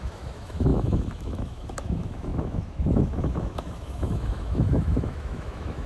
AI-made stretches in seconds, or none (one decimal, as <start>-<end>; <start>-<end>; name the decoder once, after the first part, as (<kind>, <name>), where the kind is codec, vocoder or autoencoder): 0.0-5.9 (autoencoder, DAC-VAE)